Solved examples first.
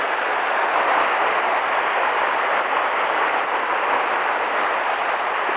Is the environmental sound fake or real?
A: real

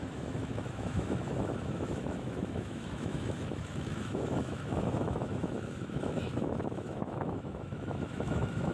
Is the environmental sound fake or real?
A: fake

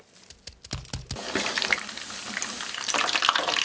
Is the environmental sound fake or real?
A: real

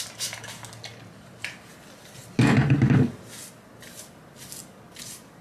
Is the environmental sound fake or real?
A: real